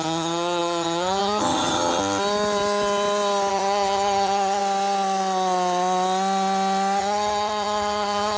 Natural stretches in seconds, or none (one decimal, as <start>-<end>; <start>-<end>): 2.0-3.5; 4.6-7.0